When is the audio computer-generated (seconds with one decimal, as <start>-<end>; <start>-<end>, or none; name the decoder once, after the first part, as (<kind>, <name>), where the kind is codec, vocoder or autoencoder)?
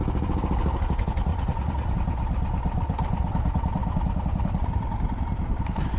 1.3-1.9 (vocoder, Vocos)